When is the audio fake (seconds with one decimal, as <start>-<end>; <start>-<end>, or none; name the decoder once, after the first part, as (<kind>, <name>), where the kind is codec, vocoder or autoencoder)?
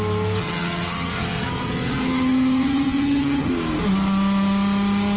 0.4-3.5 (vocoder, HiFi-GAN)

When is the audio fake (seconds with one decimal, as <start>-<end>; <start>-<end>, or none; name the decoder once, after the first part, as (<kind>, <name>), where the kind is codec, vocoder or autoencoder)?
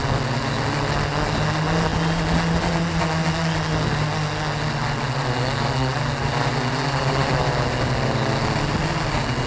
none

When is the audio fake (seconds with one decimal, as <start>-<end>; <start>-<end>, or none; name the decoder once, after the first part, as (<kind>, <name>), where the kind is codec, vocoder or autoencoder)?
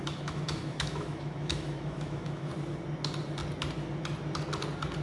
0.0-2.5 (autoencoder, DAC-VAE)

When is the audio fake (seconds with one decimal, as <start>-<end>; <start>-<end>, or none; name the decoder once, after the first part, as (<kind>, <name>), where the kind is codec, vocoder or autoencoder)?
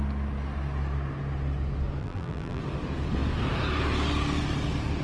2.0-2.6 (vocoder, BigVGAN v2)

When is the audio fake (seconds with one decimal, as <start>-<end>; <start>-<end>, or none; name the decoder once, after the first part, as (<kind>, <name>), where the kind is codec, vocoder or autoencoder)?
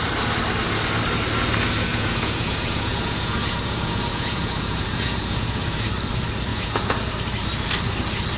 1.9-5.9 (vocoder, Vocos); 6.5-7.0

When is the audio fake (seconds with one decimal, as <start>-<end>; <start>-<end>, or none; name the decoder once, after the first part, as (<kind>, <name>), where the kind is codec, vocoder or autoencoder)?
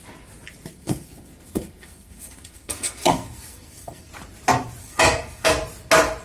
0.7-4.1 (codec, SNAC); 4.8-5.5